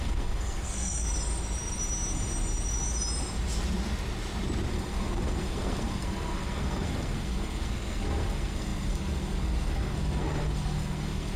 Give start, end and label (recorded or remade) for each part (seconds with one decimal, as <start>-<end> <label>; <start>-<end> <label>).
0.0-1.1 remade; 1.1-4.7 recorded; 4.7-11.4 remade